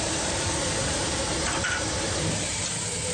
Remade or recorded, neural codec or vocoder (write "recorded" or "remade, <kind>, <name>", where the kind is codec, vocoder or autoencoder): remade, vocoder, BigVGAN v2